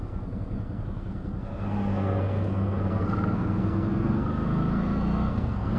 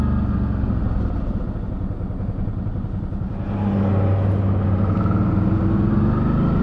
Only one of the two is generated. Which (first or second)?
first